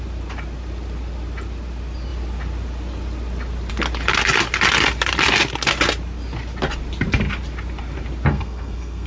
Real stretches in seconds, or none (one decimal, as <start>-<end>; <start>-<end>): 0.0-8.3